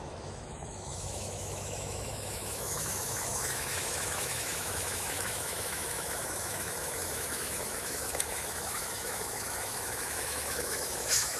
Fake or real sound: fake